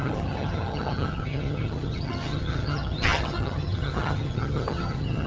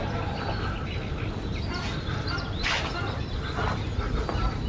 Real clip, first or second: second